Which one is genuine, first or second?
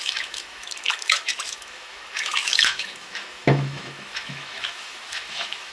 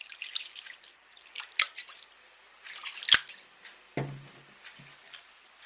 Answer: second